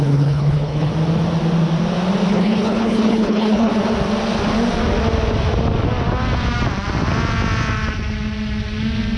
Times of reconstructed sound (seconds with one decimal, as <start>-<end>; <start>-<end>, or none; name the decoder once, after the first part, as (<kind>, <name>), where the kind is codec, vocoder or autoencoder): 0.0-0.9 (codec, HILCodec); 2.3-3.7